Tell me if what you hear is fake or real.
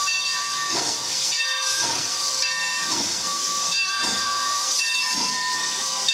fake